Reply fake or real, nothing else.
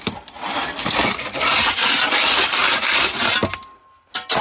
real